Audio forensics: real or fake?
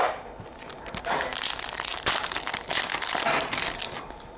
real